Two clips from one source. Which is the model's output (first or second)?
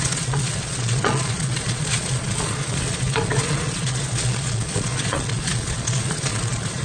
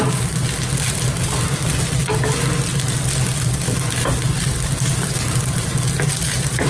first